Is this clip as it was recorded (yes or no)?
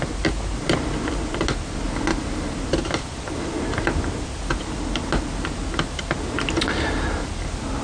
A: yes